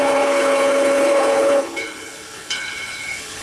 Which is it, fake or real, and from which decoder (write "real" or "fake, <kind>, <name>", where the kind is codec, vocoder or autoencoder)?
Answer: fake, codec, HILCodec